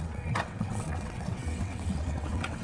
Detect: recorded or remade remade